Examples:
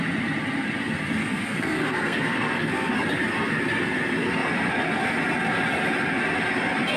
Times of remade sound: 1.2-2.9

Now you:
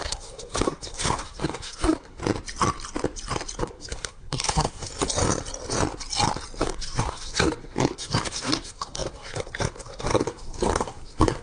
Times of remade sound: 0.0-2.2; 3.6-4.9; 6.6-11.4

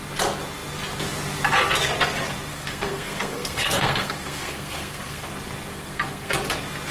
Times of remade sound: 2.5-5.3; 5.7-6.3

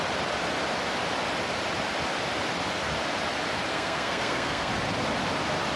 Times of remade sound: 3.7-4.7

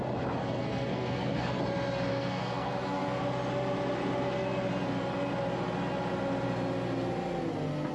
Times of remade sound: 0.4-1.6; 2.1-3.2

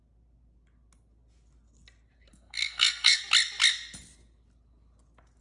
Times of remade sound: 2.3-3.2